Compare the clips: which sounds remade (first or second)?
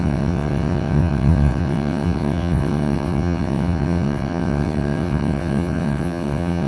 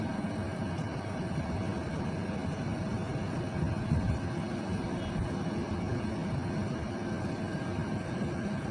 first